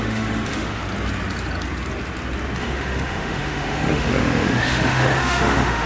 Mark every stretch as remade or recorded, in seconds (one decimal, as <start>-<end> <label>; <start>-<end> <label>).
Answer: 0.0-0.8 remade; 0.8-2.6 recorded; 2.6-5.9 remade